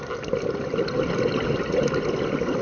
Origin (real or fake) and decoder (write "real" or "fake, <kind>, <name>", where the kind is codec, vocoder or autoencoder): real